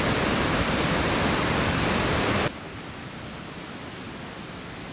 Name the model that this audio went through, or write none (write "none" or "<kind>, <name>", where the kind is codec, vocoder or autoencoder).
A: none